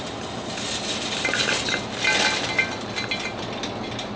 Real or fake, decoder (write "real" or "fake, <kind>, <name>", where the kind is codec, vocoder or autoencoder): real